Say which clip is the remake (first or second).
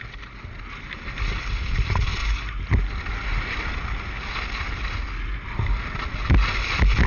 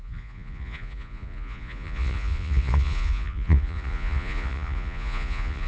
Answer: second